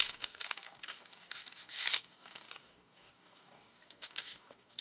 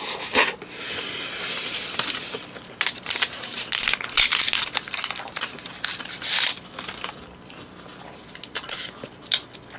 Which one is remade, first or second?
first